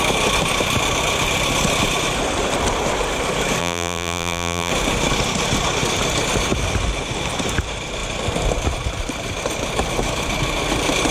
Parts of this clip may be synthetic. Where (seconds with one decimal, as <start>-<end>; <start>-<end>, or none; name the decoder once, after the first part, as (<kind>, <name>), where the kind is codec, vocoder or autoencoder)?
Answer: 3.6-4.7 (vocoder, BigVGAN v2)